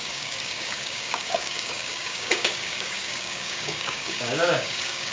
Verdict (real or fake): fake